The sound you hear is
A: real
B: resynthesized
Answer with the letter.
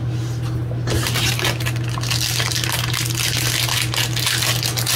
A